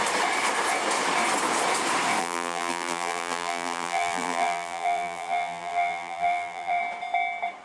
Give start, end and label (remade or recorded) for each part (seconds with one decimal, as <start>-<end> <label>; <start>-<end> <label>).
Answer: 0.0-2.2 recorded; 2.2-6.8 remade; 6.8-7.6 recorded